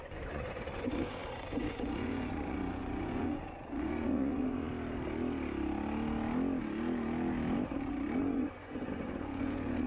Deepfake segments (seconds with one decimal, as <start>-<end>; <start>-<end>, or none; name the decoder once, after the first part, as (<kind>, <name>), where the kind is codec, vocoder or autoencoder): 0.0-4.7 (vocoder, Vocos); 8.2-9.9